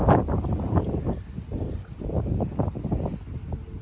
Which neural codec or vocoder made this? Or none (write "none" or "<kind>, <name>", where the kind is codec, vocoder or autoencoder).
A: none